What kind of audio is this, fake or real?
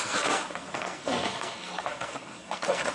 fake